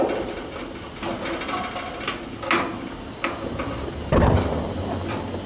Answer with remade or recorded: recorded